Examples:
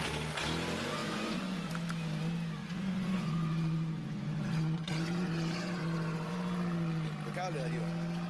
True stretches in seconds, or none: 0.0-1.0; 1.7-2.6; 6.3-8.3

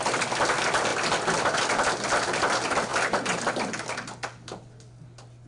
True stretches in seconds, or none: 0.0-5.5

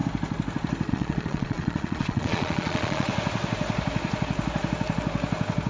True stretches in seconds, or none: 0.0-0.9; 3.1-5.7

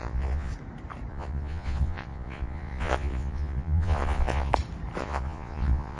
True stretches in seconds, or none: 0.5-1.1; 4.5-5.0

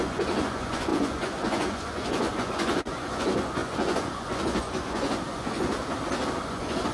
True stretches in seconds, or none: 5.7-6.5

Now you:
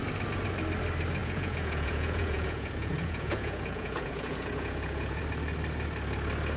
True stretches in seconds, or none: 0.0-1.2; 5.2-6.6

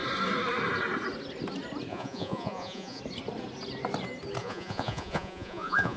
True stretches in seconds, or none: 0.0-1.9; 3.0-4.4